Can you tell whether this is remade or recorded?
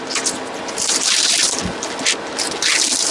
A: recorded